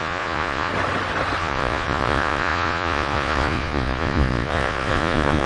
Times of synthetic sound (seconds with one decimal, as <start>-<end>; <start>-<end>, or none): 0.0-0.7; 1.4-5.5